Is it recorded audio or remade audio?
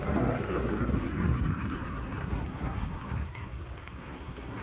remade